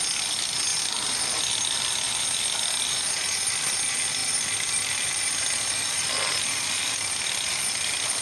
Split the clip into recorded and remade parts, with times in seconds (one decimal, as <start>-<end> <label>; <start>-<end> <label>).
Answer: 0.0-0.7 recorded; 0.7-1.4 remade; 1.4-4.2 recorded; 4.2-8.2 remade